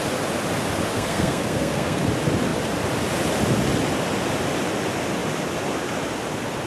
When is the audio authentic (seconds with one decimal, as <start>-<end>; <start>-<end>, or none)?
0.0-0.9; 2.0-6.7